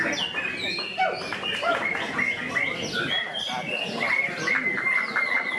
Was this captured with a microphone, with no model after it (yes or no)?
yes